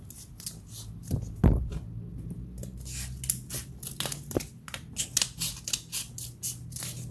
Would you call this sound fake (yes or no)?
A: no